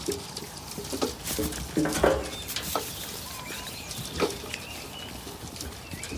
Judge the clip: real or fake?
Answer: real